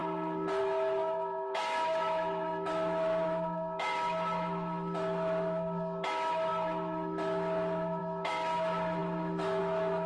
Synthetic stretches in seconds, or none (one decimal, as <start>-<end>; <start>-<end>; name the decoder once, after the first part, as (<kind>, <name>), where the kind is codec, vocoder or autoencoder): 0.6-10.1 (autoencoder, DAC-VAE)